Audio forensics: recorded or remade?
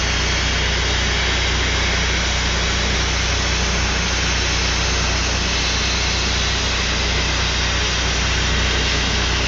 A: recorded